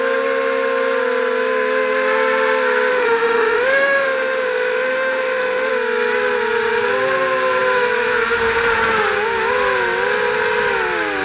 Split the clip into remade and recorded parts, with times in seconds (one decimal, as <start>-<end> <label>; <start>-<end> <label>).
0.0-2.9 recorded; 2.9-5.7 remade; 5.7-11.2 recorded